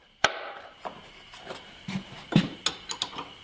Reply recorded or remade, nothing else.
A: recorded